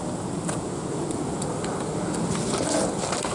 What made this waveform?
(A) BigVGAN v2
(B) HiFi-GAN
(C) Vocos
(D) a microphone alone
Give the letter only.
D